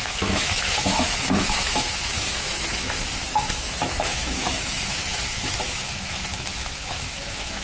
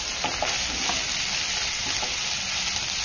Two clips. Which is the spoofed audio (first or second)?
first